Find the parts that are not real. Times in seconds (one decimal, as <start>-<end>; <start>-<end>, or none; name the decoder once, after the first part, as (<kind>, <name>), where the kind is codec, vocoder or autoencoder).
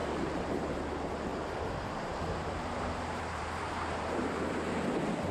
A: 0.0-0.9 (vocoder, BigVGAN v2); 1.3-4.5